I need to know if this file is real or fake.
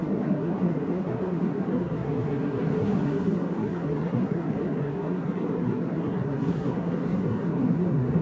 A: fake